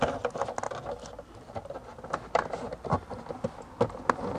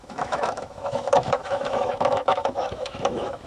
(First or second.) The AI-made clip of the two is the second